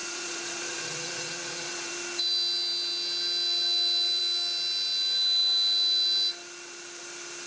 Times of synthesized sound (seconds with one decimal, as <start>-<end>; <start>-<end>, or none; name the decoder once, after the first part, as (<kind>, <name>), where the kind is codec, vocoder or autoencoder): 0.0-1.9 (vocoder, Vocos)